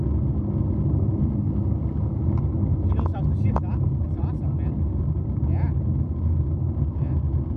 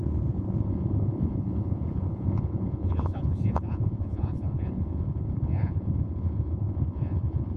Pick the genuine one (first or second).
first